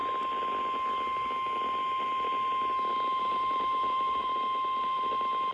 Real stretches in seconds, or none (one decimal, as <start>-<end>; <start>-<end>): 0.0-3.2; 4.3-4.8